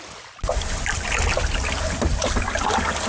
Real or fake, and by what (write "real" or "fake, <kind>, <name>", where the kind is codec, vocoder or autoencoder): real